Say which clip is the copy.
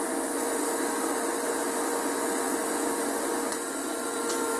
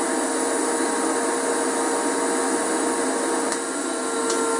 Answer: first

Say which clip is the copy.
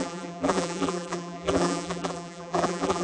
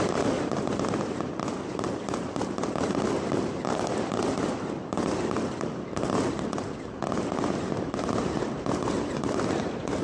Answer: first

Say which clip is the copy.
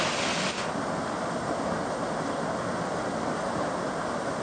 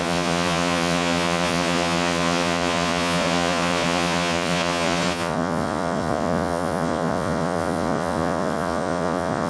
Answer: second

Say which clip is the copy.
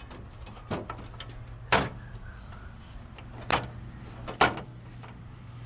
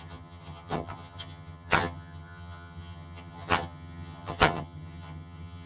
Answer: second